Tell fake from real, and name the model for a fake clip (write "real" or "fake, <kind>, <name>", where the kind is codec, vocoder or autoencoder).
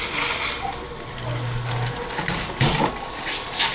real